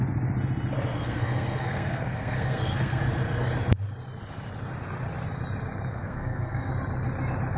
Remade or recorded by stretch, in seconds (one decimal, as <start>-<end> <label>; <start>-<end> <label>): 0.0-0.9 recorded; 0.9-3.0 remade; 3.0-5.9 recorded; 5.9-6.7 remade; 6.7-7.6 recorded